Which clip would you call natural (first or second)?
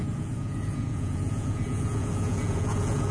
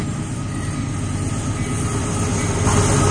second